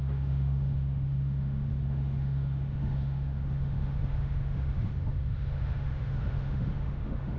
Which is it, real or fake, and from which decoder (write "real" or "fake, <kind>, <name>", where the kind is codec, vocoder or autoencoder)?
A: fake, autoencoder, DAC-VAE